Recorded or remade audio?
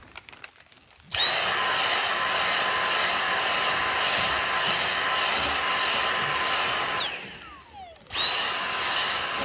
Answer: recorded